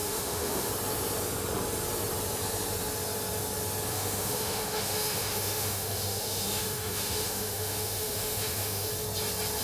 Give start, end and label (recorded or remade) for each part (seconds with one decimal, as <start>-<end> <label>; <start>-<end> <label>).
0.0-0.7 remade; 0.7-3.9 recorded; 3.9-8.9 remade; 8.9-9.6 recorded